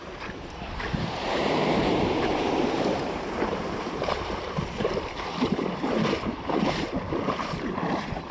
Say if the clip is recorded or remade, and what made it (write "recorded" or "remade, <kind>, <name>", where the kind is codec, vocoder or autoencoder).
remade, vocoder, BigVGAN v2